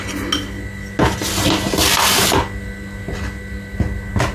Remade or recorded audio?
recorded